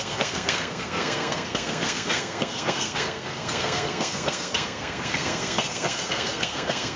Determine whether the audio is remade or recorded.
remade